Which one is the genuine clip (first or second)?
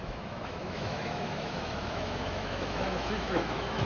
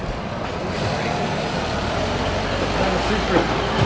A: second